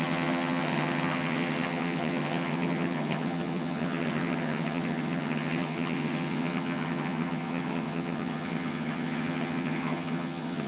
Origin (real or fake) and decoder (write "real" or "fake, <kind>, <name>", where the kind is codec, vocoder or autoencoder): fake, vocoder, HiFi-GAN